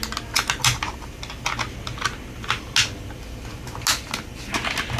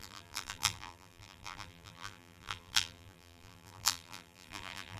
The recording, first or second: first